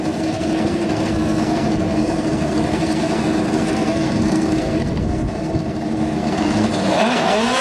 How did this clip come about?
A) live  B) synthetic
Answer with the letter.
B